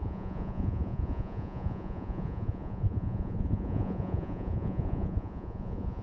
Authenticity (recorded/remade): remade